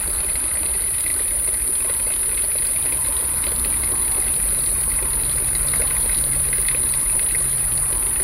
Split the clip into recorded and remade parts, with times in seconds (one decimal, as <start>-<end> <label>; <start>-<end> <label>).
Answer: 0.0-8.2 remade